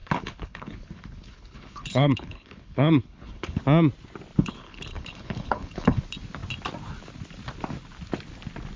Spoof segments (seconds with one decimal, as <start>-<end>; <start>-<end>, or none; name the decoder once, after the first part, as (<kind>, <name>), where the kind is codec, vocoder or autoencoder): 0.0-3.6 (codec, HILCodec); 4.4-6.0